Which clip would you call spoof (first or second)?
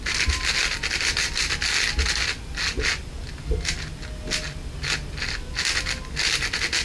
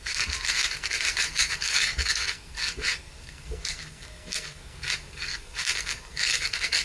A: second